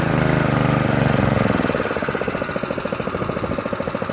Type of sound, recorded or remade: recorded